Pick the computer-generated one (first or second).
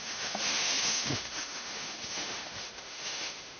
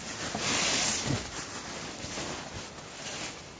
first